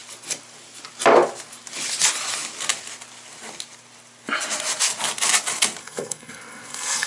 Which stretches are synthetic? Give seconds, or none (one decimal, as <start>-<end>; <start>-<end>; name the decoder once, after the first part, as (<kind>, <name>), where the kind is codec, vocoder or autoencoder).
5.8-7.1 (codec, SNAC)